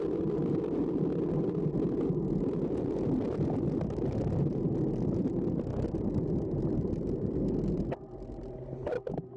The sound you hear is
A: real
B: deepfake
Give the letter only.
A